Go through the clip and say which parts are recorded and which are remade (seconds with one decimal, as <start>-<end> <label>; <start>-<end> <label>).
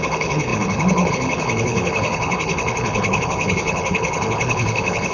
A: 0.0-5.1 remade